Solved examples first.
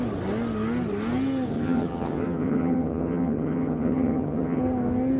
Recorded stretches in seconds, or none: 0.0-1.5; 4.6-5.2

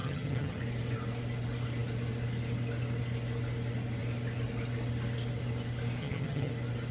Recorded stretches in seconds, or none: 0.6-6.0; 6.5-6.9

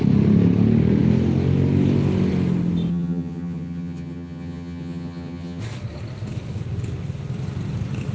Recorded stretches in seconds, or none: 0.0-2.9; 5.6-8.1

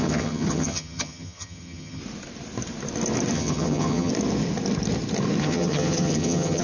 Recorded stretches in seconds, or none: 2.0-3.3; 4.1-5.4